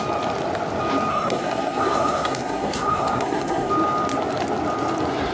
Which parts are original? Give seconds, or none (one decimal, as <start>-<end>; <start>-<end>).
0.0-1.1; 3.7-5.3